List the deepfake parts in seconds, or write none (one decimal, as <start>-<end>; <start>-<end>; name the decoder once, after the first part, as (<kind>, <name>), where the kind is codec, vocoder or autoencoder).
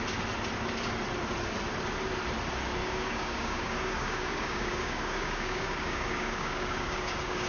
2.8-7.5 (codec, DAC)